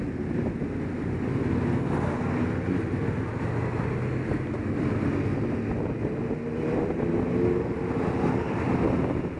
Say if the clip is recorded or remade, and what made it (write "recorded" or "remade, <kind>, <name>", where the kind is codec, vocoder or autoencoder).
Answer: recorded